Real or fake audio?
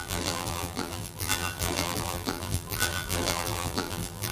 fake